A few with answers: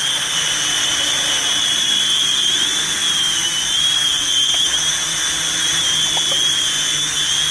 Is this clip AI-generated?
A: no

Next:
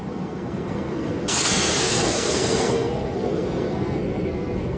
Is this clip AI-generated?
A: yes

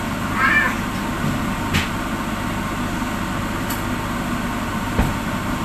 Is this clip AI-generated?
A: no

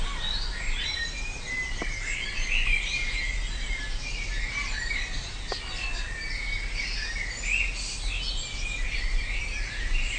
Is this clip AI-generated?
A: no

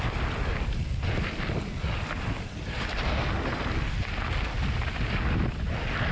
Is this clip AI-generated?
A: no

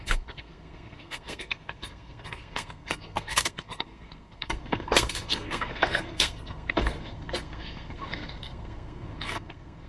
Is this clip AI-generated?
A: yes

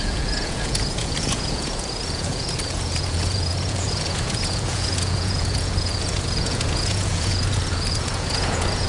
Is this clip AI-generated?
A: yes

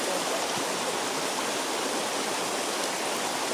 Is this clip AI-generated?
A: yes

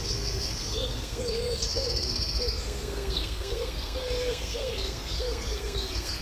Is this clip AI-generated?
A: yes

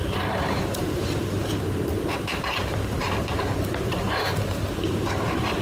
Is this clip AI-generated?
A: yes